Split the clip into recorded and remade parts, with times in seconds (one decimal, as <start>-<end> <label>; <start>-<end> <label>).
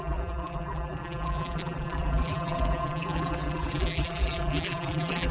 0.0-5.3 remade